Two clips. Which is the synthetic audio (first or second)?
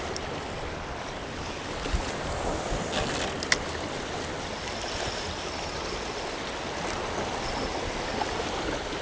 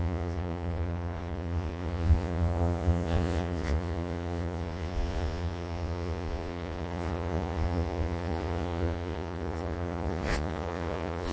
second